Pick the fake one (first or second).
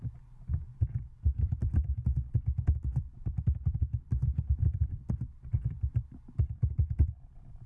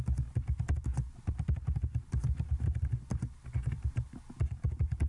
first